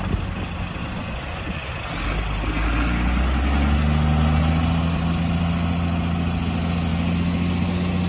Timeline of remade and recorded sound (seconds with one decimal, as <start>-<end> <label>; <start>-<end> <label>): 0.0-0.8 recorded; 0.8-1.7 remade; 1.7-8.1 recorded